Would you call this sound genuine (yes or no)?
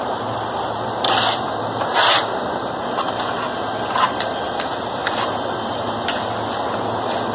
yes